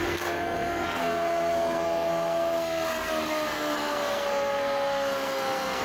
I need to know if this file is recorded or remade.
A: remade